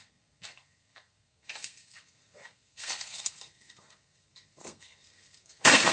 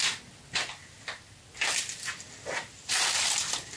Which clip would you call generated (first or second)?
first